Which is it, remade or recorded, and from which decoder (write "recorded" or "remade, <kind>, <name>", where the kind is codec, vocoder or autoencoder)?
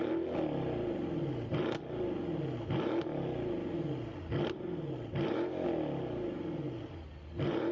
recorded